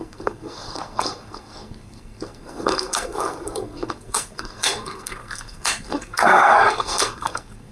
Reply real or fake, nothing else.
fake